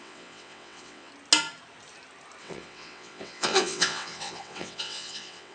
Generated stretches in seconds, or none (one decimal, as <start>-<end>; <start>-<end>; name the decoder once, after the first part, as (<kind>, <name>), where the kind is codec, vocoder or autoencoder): 0.0-1.1 (vocoder, WaveNeXt); 2.4-5.5